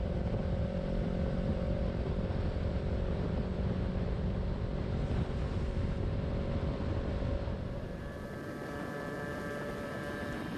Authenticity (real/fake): fake